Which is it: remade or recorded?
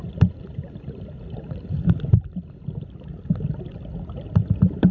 recorded